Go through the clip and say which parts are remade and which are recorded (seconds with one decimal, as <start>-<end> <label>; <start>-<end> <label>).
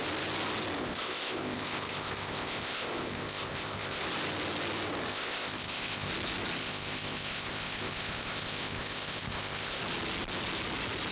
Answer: 0.0-0.8 recorded; 0.8-4.0 remade; 4.0-5.1 recorded; 5.1-6.1 remade; 6.1-6.6 recorded; 6.6-9.8 remade; 9.8-11.1 recorded